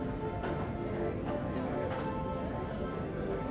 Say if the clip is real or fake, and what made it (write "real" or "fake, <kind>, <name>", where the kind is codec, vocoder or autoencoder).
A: real